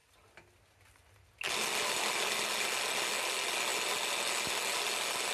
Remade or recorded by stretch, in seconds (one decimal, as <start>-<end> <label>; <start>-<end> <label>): 0.0-5.3 recorded